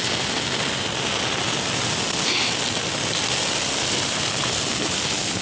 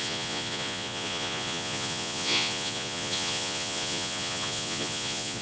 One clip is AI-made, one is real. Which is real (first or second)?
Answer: first